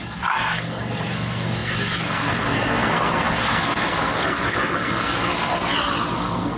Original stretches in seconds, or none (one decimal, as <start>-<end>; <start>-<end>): 5.6-6.1